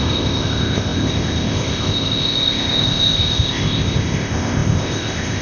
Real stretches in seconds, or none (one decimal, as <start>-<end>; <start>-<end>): none